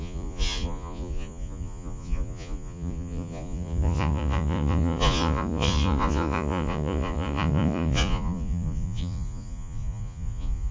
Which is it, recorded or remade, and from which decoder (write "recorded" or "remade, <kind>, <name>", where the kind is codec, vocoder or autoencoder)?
remade, vocoder, Vocos